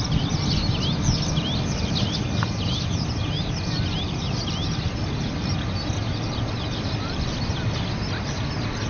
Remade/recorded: recorded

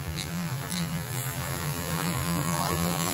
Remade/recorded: remade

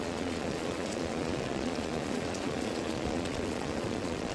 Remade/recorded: remade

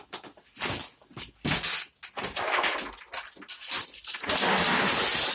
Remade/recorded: recorded